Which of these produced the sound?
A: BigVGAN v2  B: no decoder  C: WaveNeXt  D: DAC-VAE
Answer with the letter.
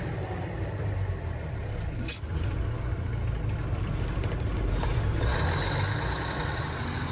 B